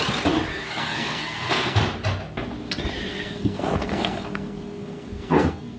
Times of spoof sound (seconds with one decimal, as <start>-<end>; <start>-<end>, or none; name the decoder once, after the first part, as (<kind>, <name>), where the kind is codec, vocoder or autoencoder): 0.5-1.8 (codec, SNAC); 3.1-5.8